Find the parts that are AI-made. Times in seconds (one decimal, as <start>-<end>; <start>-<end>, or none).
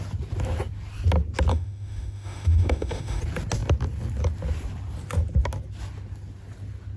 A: 1.5-3.2